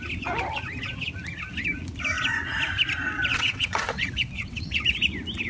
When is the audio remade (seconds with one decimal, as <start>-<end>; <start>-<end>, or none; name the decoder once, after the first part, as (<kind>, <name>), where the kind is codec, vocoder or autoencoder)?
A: 3.3-4.8 (vocoder, WaveNeXt)